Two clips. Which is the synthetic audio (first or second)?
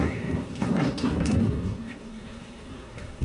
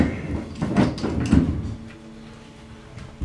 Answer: first